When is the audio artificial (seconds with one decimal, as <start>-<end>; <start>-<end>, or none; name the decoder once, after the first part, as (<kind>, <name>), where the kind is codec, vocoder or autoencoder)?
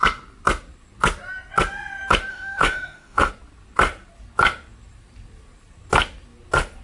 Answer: 2.3-3.3 (autoencoder, DAC-VAE)